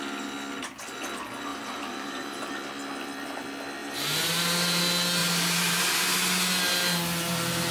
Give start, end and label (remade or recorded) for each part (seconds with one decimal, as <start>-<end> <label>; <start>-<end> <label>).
0.0-1.5 recorded; 1.5-2.5 remade; 2.5-3.8 recorded; 3.8-4.8 remade; 4.8-5.2 recorded; 5.2-5.8 remade; 5.8-7.7 recorded